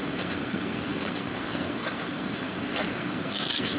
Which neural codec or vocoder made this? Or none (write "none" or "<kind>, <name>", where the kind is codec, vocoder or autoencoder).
codec, SNAC